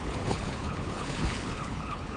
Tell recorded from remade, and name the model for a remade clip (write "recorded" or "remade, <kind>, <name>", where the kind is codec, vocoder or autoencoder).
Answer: remade, codec, HILCodec